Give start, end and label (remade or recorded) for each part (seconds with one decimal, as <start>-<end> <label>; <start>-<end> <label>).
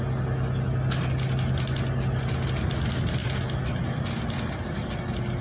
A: 0.0-5.4 recorded